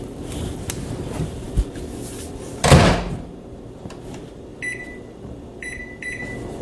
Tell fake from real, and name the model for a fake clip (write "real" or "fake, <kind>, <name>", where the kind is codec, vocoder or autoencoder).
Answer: real